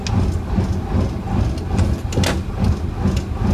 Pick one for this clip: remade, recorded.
recorded